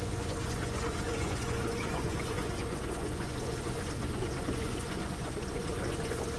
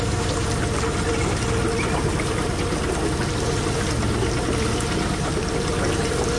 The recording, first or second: second